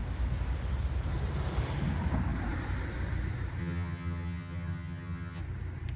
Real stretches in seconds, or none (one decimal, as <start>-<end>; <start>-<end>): 0.0-3.6; 5.4-6.0